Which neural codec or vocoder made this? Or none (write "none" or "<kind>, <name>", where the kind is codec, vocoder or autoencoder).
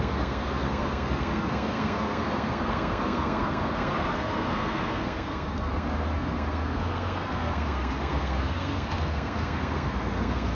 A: codec, SNAC